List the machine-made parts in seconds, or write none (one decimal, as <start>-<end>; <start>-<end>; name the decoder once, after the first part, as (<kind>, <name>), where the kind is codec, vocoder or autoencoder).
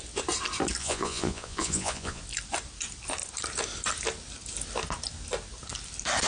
0.8-2.2 (vocoder, Vocos)